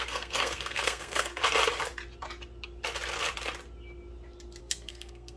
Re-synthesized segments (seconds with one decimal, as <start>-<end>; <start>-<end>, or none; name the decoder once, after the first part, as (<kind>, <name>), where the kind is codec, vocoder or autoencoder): 0.0-1.4 (codec, SNAC); 4.6-5.4